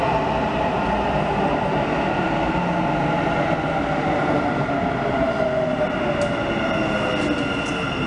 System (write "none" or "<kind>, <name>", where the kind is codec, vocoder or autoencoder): none